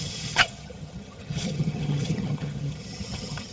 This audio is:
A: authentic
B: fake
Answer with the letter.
B